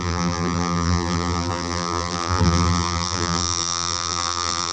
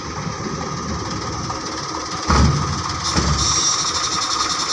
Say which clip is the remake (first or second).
first